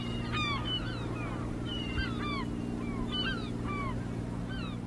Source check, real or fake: real